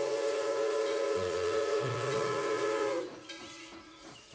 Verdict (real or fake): fake